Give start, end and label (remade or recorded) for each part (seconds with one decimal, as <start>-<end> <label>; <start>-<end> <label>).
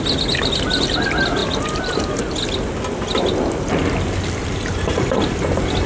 0.0-5.9 recorded